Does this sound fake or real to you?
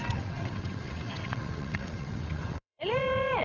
fake